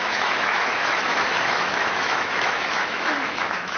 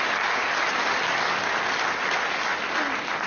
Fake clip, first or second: first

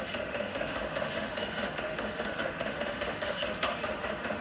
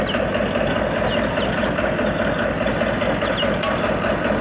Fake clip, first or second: first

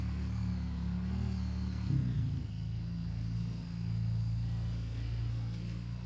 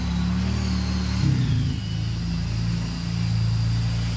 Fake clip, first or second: first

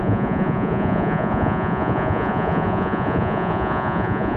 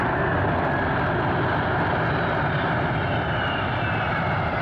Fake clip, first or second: first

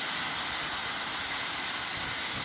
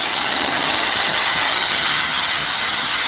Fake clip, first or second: second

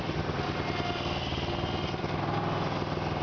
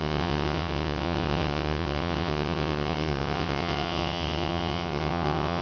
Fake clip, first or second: second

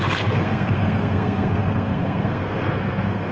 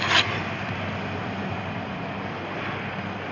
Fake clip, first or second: first